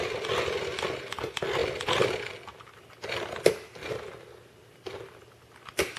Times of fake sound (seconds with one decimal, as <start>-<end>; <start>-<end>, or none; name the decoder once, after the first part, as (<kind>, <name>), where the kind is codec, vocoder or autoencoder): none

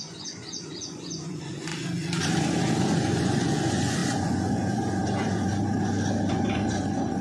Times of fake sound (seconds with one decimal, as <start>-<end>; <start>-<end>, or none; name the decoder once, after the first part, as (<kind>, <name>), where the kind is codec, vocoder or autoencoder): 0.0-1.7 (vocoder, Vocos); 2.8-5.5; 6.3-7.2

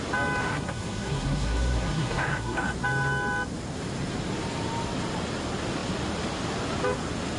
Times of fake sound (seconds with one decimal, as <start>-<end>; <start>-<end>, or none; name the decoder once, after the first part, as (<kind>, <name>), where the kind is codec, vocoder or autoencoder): 0.4-2.7 (codec, SNAC)